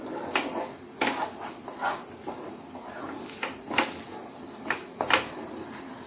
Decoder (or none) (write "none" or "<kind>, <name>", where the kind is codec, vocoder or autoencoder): none